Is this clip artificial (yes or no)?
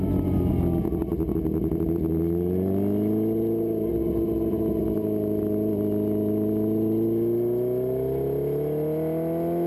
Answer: no